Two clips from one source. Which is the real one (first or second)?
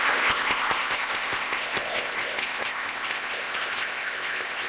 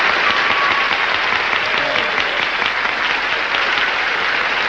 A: second